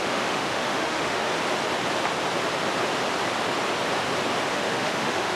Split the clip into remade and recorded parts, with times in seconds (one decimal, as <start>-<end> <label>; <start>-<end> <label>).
0.0-1.3 remade; 1.3-4.5 recorded; 4.5-5.4 remade